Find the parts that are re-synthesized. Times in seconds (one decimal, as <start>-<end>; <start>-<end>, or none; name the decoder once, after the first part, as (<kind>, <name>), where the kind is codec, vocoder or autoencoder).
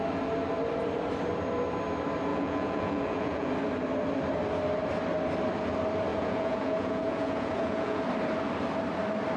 2.3-3.5 (vocoder, Vocos); 6.1-8.0